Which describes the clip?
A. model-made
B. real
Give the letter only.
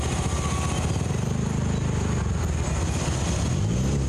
B